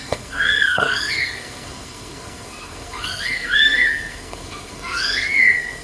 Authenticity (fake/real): fake